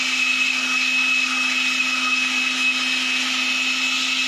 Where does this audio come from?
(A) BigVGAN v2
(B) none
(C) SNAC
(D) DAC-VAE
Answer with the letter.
B